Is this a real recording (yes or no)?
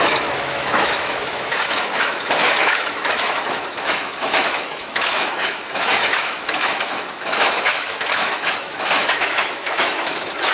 no